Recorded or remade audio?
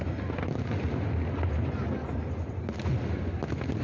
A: recorded